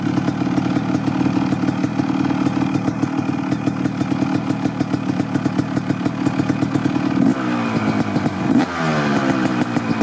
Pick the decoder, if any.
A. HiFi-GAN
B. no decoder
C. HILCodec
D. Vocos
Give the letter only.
B